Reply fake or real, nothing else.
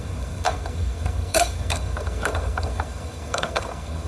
fake